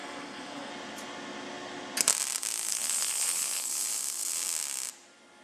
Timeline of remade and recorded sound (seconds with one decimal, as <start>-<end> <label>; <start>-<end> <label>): 0.0-0.7 remade; 0.7-2.7 recorded; 2.7-3.7 remade; 3.7-5.4 recorded